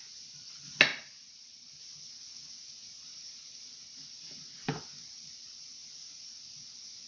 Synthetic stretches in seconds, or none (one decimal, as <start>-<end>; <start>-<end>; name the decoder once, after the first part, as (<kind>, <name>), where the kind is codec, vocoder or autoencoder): 0.9-1.8 (vocoder, BigVGAN v2); 2.8-4.8